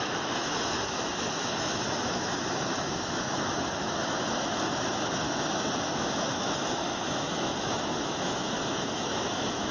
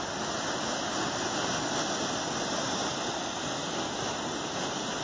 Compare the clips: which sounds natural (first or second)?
second